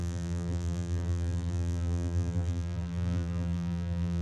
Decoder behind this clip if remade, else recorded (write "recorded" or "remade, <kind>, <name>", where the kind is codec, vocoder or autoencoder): remade, vocoder, BigVGAN v2